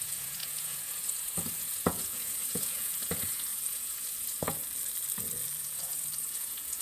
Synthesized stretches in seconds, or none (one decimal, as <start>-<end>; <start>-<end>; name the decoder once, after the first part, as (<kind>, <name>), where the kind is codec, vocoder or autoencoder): 0.0-4.6 (vocoder, Vocos); 5.6-6.8